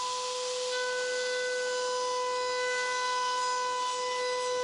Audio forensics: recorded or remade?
recorded